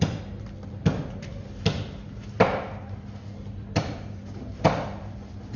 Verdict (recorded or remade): recorded